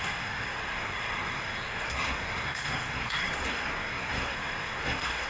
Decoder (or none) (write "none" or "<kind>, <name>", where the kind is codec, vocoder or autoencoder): codec, SNAC